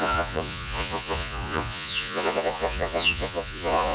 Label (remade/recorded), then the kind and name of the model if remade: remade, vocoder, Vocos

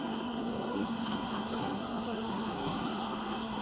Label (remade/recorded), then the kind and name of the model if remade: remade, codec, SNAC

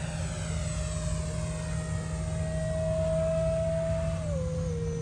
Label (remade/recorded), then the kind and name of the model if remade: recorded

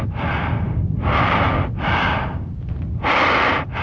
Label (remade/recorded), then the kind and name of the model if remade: recorded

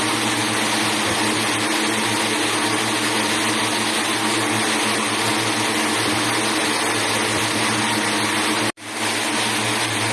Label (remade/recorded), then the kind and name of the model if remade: recorded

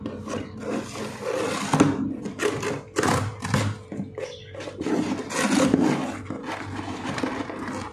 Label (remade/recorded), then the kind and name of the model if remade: recorded